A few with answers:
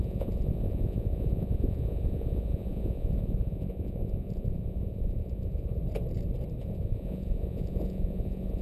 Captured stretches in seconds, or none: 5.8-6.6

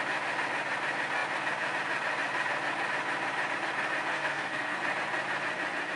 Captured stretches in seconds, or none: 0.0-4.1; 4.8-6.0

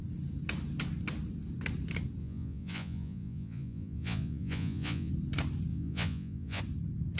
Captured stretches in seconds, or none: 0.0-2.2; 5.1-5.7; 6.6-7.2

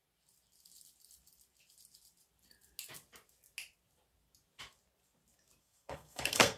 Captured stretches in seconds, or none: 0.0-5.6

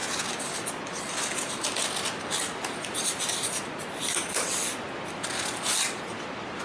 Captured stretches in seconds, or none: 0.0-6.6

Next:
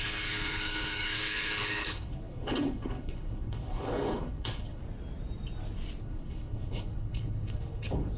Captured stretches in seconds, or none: 4.8-6.0

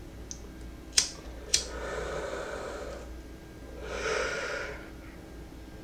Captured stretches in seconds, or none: 0.0-5.8

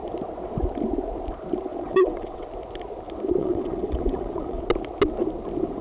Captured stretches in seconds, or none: 0.0-1.7; 2.5-3.4; 4.6-5.8